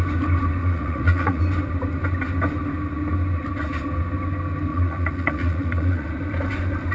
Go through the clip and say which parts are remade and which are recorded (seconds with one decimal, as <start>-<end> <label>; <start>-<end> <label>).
0.0-0.6 recorded; 0.6-1.4 remade; 1.4-4.7 recorded; 4.7-6.1 remade; 6.1-6.9 recorded